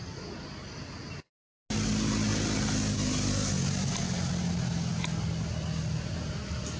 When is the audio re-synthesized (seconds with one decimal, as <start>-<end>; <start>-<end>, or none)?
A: none